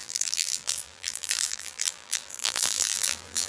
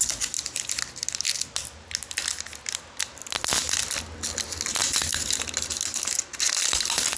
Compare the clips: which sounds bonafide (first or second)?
second